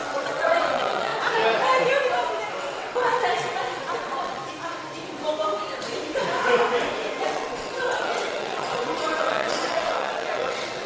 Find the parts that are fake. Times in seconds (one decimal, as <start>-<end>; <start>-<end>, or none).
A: 0.0-1.1; 2.5-4.4; 7.2-10.9